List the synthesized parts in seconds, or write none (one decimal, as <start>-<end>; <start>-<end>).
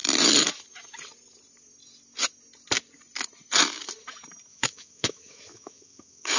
4.5-6.4